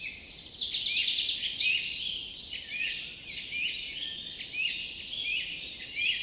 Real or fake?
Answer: real